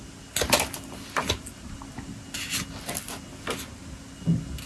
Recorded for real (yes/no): yes